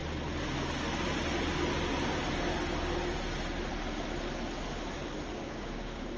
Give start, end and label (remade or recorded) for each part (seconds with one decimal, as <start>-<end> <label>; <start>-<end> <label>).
0.0-5.3 recorded; 5.3-6.2 remade